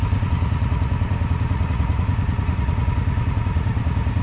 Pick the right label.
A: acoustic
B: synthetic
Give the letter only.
B